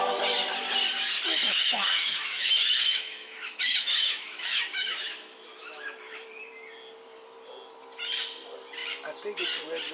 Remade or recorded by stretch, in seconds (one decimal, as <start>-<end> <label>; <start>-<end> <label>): 0.0-1.4 recorded; 1.4-6.4 remade; 6.4-9.9 recorded